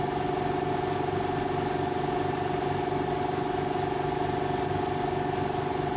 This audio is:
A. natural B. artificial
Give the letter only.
A